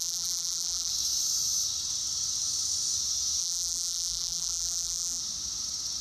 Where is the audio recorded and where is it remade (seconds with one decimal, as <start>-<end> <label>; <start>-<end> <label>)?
0.0-0.9 remade; 0.9-3.4 recorded; 3.4-5.2 remade; 5.2-6.0 recorded